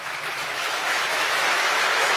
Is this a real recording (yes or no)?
no